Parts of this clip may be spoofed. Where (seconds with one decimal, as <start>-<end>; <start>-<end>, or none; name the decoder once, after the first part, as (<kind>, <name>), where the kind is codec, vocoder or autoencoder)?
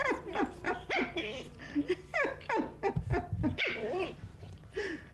0.0-2.1 (vocoder, BigVGAN v2); 3.6-5.1